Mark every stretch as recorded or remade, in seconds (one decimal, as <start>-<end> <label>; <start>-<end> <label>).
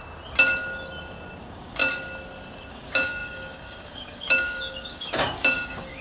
0.0-1.4 recorded; 1.4-1.8 remade; 1.8-2.7 recorded; 2.7-6.0 remade